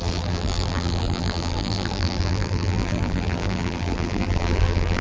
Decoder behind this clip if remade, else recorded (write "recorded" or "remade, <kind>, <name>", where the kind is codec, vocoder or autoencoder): remade, vocoder, BigVGAN v2